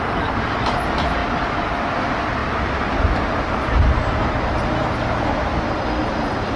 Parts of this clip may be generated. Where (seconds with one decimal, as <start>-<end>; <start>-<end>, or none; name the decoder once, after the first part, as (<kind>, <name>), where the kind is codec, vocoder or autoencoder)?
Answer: none